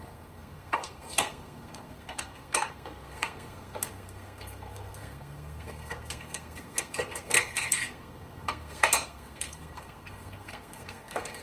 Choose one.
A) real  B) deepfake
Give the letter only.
B